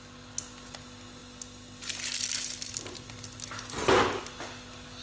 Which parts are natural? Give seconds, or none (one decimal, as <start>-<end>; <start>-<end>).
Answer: 0.0-5.0